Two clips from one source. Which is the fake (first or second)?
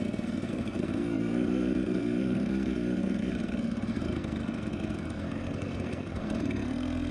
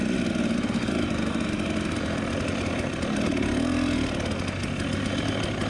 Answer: first